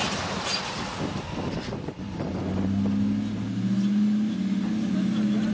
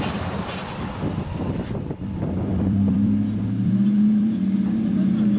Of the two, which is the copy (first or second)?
second